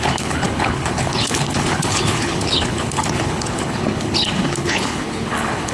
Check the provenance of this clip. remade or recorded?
remade